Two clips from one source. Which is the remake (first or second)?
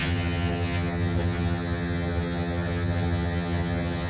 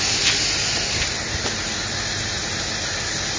first